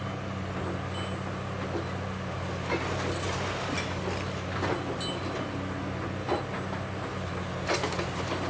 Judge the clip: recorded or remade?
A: recorded